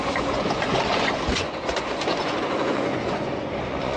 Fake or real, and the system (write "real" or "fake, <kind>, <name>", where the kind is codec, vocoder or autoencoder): fake, vocoder, Vocos